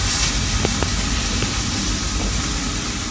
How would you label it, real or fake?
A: real